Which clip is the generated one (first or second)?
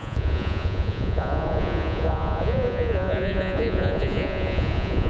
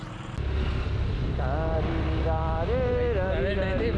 first